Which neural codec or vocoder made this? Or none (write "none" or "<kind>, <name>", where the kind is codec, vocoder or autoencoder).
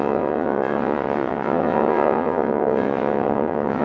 vocoder, WaveNeXt